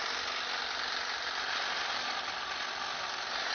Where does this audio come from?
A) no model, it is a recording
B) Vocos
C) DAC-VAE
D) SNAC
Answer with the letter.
A